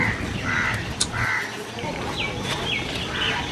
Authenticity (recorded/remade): recorded